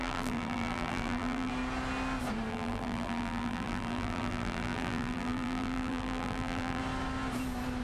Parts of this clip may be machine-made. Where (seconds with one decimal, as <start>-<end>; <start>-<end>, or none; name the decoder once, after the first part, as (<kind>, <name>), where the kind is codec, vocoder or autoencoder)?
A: 0.0-1.5 (vocoder, BigVGAN v2); 2.5-6.8